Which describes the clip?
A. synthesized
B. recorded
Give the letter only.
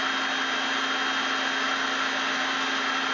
B